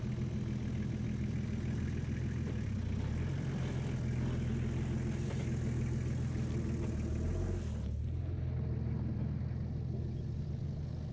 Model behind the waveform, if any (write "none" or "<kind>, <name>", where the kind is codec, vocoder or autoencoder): none